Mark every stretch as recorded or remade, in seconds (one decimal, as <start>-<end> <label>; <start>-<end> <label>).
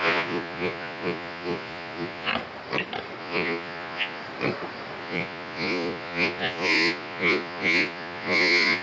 0.0-2.3 remade; 2.3-3.2 recorded; 3.2-4.2 remade; 4.2-5.0 recorded; 5.0-8.8 remade